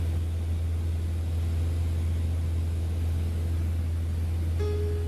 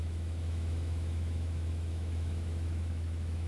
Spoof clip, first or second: second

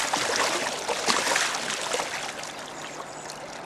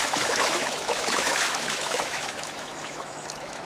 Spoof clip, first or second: second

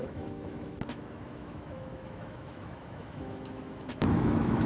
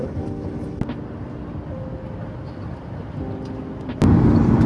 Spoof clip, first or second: first